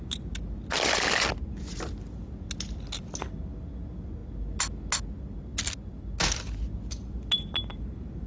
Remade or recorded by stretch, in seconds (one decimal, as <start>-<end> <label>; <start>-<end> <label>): 0.0-8.3 recorded